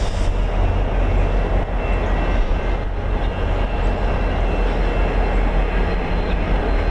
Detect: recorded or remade recorded